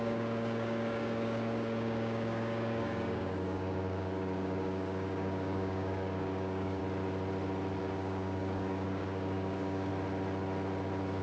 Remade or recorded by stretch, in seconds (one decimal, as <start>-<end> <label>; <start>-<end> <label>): 0.0-6.8 remade; 6.8-7.8 recorded; 7.8-9.9 remade; 9.9-11.2 recorded